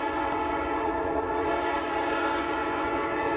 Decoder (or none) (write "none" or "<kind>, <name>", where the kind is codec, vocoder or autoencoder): vocoder, Vocos